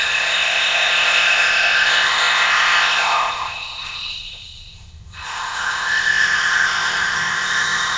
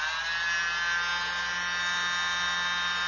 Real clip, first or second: second